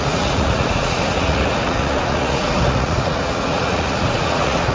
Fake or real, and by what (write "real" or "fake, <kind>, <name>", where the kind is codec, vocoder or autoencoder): fake, vocoder, Vocos